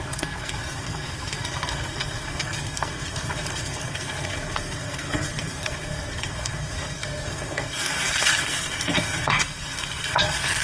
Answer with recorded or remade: remade